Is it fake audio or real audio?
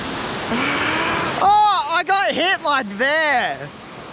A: real